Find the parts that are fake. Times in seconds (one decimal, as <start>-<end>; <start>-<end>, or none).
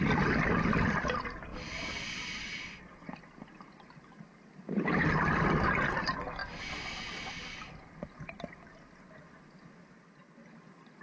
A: none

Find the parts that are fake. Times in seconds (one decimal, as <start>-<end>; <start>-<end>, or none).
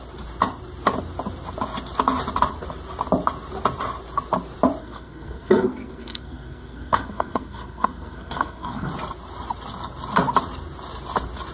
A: 4.8-8.9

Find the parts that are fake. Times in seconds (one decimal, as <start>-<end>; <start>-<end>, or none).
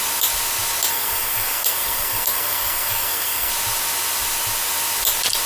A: 0.9-3.5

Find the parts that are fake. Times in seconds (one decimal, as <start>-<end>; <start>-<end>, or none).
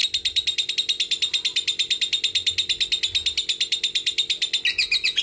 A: 4.7-5.2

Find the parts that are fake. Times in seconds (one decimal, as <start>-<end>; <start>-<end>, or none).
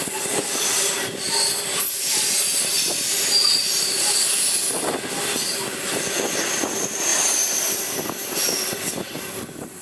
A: 3.6-4.5; 7.1-8.9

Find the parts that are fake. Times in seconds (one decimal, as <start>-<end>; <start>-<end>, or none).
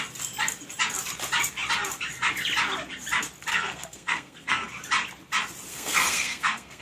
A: 3.5-4.7; 5.7-6.8